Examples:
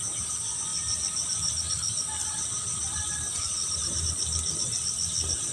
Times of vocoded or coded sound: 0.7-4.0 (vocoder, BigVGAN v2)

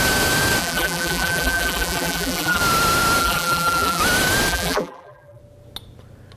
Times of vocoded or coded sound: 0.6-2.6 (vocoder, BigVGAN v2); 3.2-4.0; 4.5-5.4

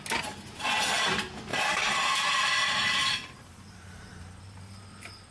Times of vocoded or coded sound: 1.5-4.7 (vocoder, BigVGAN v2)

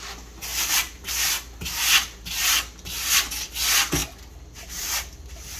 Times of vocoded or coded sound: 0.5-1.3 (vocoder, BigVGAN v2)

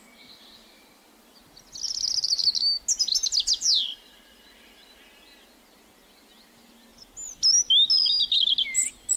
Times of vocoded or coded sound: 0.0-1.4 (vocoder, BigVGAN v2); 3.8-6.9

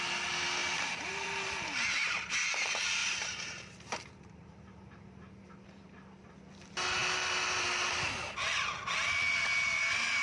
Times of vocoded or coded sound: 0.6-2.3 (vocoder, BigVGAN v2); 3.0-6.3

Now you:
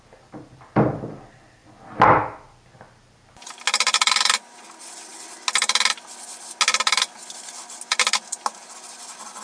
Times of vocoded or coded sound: none